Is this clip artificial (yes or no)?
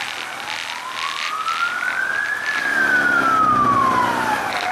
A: no